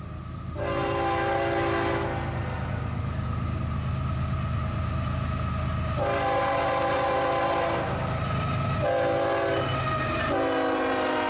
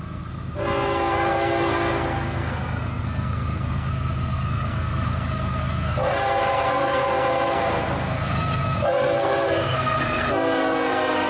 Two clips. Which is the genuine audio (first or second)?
first